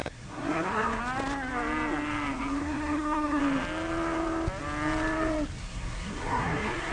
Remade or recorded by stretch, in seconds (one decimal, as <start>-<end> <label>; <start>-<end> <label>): 0.0-1.0 remade; 1.0-2.6 recorded; 2.6-3.4 remade; 3.4-5.6 recorded; 5.6-6.9 remade